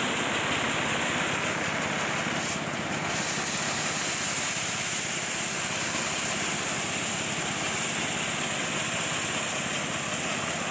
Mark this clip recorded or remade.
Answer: recorded